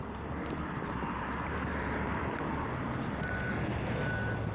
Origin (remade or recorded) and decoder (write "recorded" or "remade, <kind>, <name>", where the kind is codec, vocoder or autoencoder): recorded